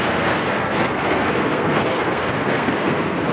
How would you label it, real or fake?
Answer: fake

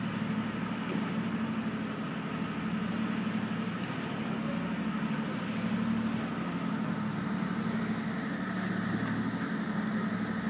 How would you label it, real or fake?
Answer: real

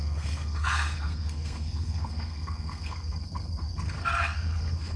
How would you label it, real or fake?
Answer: fake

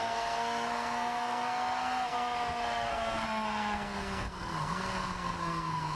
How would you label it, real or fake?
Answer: fake